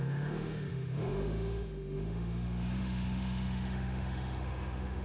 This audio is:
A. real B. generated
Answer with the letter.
B